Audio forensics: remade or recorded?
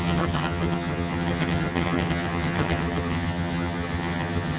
remade